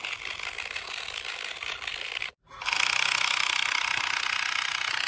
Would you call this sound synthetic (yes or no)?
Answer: no